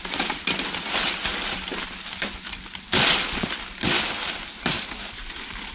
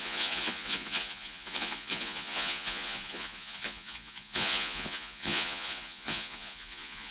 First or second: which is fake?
second